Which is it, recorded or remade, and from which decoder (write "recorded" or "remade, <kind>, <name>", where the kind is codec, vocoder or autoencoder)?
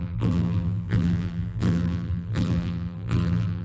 remade, vocoder, BigVGAN v2